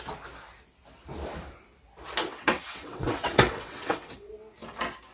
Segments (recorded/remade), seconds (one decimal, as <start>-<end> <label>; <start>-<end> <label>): 0.0-2.3 recorded; 2.3-4.3 remade; 4.3-5.1 recorded